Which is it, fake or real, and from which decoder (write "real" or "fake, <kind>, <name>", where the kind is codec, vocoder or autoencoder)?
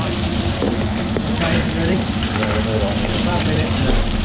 fake, vocoder, BigVGAN v2